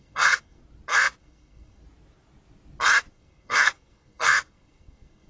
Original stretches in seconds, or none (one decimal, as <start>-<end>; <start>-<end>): 0.6-1.2; 1.8-3.1